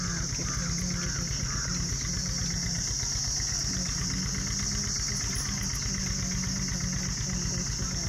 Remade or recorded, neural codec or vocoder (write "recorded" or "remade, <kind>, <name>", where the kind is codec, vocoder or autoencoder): recorded